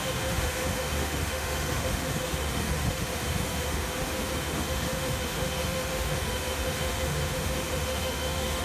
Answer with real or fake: fake